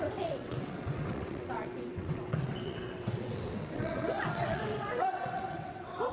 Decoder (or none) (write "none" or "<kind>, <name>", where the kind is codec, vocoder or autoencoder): vocoder, WaveNeXt